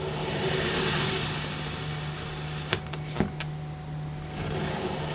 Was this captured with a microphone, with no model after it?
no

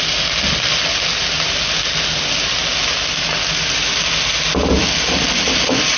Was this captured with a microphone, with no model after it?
yes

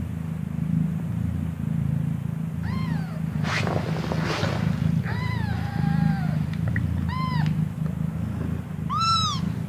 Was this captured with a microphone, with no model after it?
yes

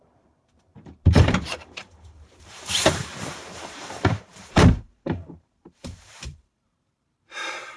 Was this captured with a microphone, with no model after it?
no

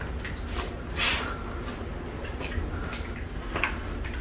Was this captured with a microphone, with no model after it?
yes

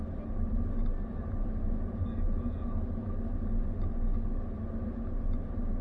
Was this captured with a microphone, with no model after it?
yes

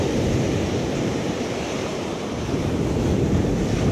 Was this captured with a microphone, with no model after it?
no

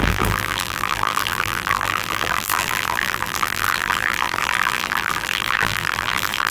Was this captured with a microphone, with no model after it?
no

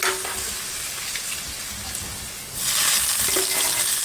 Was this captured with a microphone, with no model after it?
yes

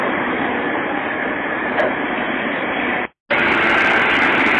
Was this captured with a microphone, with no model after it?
yes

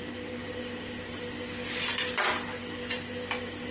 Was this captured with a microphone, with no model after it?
no